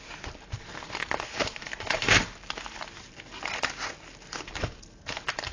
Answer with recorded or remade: recorded